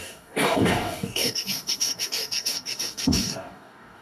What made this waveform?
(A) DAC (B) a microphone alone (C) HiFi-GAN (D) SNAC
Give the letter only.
A